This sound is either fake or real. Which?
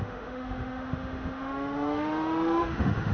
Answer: fake